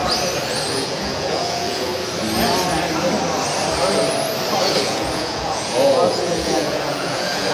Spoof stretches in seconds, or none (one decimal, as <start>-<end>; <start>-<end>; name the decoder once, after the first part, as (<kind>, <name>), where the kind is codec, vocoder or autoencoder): 0.7-1.9 (vocoder, Vocos); 4.6-7.5